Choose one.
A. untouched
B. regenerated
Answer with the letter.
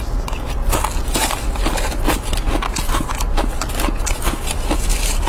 A